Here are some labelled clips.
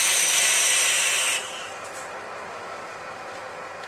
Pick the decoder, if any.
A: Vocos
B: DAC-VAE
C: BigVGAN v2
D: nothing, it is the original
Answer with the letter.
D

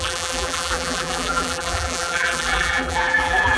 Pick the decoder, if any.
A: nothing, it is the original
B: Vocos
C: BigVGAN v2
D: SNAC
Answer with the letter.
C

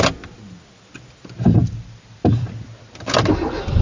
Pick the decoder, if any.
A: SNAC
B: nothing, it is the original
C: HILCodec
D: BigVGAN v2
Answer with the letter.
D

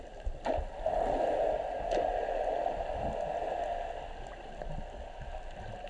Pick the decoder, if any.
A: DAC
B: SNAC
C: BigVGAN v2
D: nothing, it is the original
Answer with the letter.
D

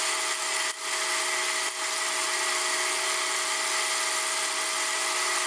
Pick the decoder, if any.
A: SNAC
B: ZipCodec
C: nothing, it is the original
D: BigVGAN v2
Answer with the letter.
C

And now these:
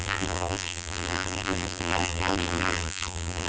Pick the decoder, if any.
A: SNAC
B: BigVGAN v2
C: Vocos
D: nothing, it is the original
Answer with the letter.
B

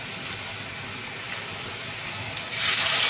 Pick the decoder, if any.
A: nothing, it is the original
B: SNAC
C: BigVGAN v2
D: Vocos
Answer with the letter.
A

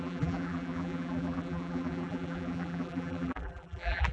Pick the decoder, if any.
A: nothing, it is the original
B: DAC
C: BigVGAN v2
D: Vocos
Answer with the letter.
C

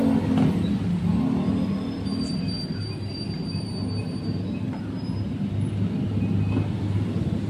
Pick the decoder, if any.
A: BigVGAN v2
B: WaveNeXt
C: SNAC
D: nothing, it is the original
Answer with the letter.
D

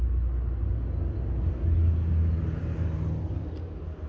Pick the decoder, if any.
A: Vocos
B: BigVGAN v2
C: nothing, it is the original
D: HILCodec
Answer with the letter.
C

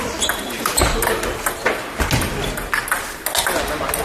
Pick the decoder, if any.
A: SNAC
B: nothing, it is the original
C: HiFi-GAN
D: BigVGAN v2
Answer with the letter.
B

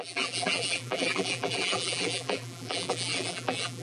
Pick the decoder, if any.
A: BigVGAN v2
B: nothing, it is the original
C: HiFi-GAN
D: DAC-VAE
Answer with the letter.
A